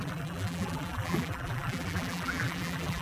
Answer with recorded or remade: remade